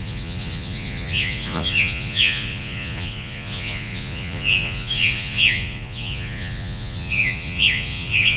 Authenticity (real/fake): fake